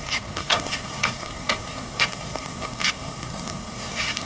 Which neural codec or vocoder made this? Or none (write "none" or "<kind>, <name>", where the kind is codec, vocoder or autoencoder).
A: codec, SNAC